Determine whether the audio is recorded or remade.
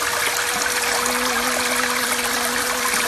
recorded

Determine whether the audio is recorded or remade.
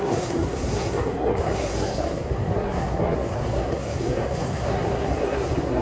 remade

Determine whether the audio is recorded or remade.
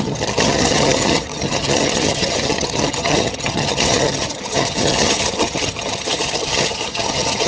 remade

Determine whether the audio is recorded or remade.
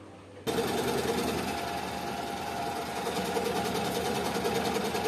recorded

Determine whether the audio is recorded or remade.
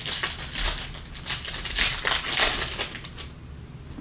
recorded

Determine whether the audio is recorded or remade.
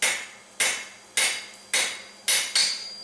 recorded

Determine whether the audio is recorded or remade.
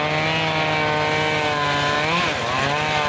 recorded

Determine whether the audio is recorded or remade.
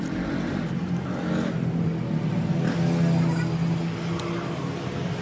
recorded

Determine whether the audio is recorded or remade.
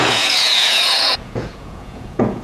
remade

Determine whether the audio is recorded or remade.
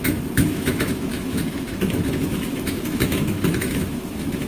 remade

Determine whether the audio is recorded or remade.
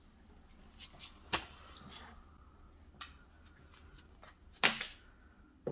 recorded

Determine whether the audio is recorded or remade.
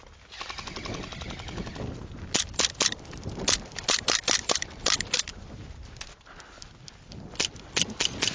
recorded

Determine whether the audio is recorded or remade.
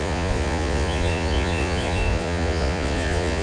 remade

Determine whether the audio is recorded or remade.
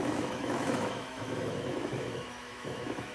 remade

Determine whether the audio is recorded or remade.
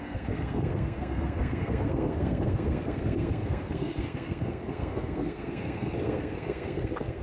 remade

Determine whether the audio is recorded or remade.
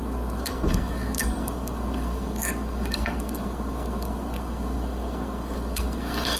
remade